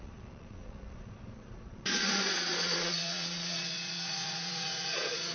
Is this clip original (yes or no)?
no